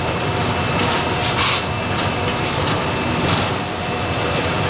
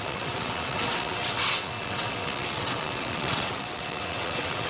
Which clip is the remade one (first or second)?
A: second